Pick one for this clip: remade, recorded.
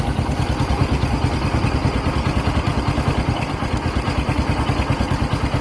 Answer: recorded